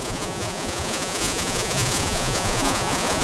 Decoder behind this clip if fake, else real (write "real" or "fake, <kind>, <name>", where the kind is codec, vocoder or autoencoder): fake, vocoder, Vocos